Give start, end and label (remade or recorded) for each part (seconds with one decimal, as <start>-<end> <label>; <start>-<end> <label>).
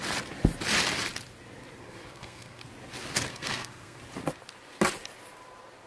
0.0-1.8 recorded; 1.8-2.6 remade; 2.6-3.3 recorded; 3.3-4.0 remade; 4.0-5.9 recorded